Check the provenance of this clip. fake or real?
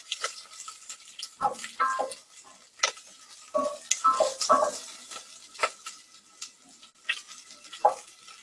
real